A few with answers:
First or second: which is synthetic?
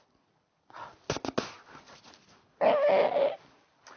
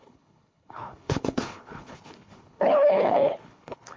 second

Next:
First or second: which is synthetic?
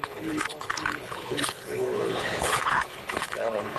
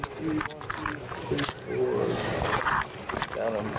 first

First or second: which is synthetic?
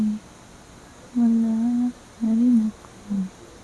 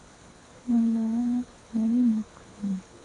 second